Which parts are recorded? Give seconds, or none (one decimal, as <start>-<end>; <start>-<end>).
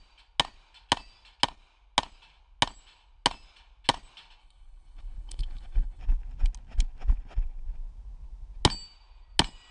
0.0-4.4; 6.0-9.7